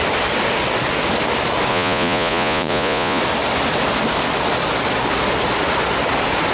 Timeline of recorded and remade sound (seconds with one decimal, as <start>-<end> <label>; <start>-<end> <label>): 0.0-1.7 recorded; 1.7-3.2 remade; 3.2-6.5 recorded